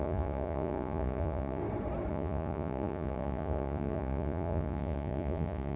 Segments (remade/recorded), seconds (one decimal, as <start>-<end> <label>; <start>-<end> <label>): 0.0-1.6 remade; 1.6-2.1 recorded; 2.1-5.8 remade

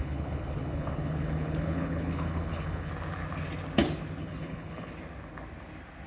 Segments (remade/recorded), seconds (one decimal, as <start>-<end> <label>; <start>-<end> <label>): 0.0-2.9 remade; 2.9-4.2 recorded; 4.2-4.9 remade; 4.9-6.1 recorded

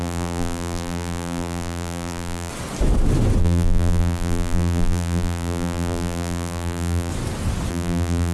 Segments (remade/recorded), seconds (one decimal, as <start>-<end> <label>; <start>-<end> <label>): 0.0-2.5 remade; 2.5-3.4 recorded; 3.4-7.1 remade; 7.1-7.7 recorded; 7.7-8.3 remade

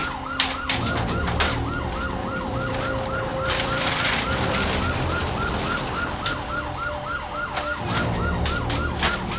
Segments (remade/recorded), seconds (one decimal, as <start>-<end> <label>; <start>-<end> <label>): 0.0-2.2 recorded; 2.2-2.8 remade; 2.8-3.3 recorded; 3.3-6.5 remade; 6.5-9.4 recorded

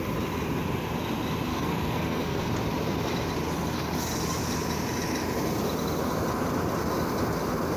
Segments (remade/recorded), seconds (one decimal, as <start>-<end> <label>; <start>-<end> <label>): 0.0-1.5 recorded; 1.5-2.5 remade; 2.5-7.8 recorded

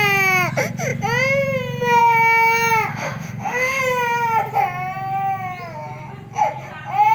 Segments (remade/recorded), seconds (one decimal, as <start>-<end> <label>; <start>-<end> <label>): 0.0-2.9 recorded; 2.9-3.8 remade; 3.8-7.1 recorded

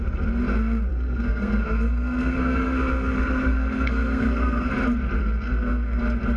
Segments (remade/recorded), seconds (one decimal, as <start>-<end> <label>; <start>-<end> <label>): 0.0-0.9 recorded; 0.9-4.7 remade; 4.7-5.2 recorded; 5.2-6.0 remade; 6.0-6.4 recorded